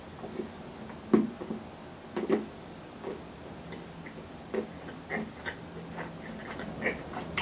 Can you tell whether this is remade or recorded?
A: recorded